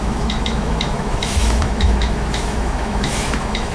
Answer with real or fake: fake